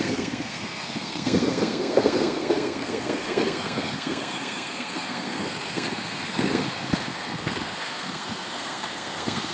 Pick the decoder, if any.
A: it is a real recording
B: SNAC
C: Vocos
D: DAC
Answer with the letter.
B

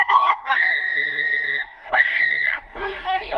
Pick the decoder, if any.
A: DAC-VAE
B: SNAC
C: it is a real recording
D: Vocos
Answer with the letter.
B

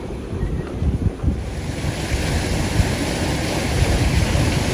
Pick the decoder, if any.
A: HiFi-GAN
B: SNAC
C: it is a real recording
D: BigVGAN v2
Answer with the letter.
C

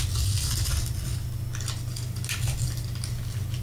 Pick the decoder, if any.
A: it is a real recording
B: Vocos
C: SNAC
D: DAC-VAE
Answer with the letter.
A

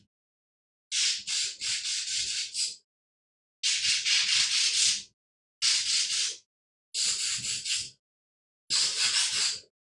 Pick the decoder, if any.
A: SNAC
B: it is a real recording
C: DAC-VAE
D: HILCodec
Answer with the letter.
B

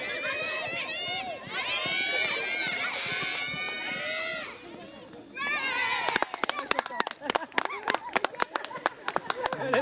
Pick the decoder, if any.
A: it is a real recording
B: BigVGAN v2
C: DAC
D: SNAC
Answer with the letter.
A